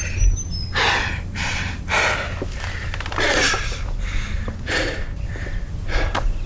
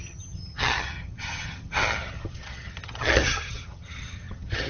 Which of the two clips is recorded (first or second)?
first